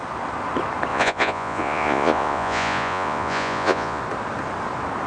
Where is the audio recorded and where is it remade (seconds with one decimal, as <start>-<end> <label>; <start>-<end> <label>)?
0.0-0.9 recorded; 0.9-4.0 remade; 4.0-5.1 recorded